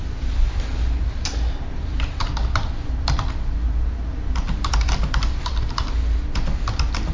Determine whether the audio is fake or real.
real